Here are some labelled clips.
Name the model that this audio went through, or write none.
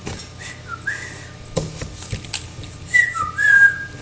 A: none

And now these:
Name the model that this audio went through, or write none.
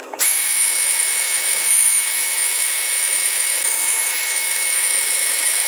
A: autoencoder, DAC-VAE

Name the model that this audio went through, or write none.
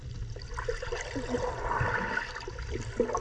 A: none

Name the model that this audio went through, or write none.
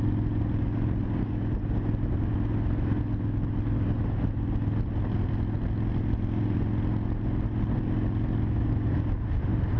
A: none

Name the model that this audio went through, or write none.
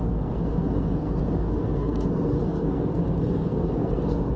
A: codec, SNAC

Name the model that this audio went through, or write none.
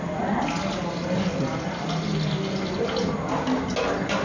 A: none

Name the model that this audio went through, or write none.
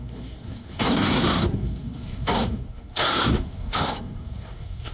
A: codec, SNAC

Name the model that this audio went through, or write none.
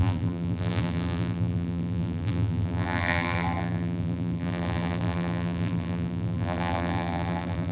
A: vocoder, BigVGAN v2